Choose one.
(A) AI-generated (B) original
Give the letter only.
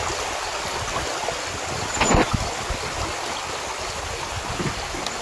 B